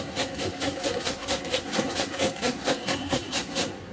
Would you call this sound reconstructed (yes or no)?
yes